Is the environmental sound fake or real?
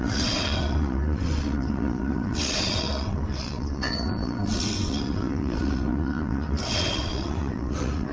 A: fake